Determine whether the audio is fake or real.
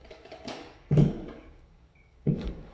fake